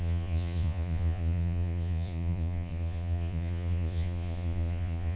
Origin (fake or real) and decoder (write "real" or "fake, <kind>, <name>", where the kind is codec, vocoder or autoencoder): fake, vocoder, Vocos